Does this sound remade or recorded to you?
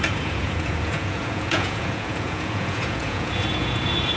remade